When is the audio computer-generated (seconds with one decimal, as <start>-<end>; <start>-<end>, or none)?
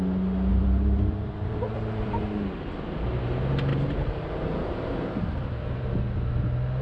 0.5-2.8; 3.7-5.9